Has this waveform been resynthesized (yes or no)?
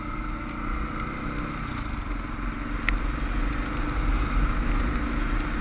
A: no